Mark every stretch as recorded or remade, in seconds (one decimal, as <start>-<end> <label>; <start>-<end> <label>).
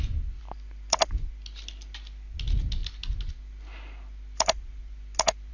0.0-5.5 recorded